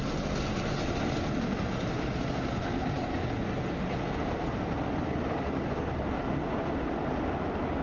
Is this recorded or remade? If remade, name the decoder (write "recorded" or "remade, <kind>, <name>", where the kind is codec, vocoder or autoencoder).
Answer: recorded